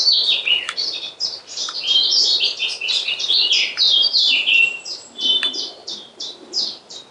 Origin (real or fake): fake